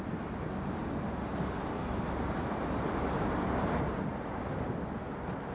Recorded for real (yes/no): yes